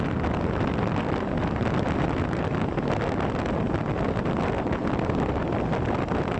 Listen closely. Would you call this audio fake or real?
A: real